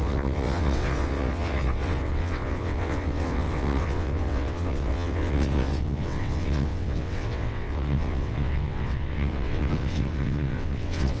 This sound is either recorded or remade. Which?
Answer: remade